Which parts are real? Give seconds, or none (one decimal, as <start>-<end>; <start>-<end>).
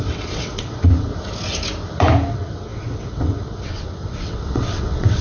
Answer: 1.1-2.3